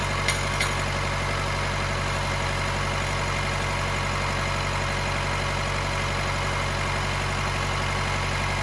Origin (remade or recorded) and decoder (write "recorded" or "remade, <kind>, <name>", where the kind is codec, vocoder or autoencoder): recorded